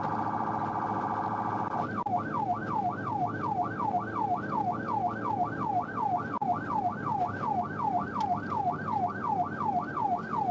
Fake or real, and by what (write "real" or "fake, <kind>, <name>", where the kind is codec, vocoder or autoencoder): real